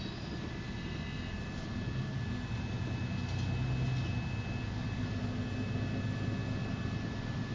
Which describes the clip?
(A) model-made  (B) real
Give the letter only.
B